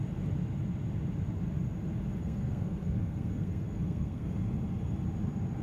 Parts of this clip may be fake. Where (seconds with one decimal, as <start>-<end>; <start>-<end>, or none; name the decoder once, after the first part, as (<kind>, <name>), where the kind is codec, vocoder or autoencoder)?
2.2-4.3 (codec, SNAC)